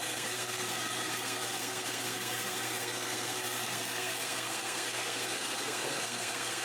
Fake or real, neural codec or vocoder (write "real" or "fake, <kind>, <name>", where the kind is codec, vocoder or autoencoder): fake, codec, SNAC